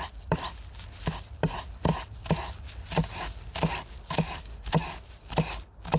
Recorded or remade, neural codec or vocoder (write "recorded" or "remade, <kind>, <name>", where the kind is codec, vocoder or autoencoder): recorded